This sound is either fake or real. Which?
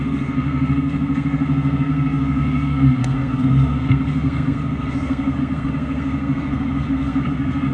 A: fake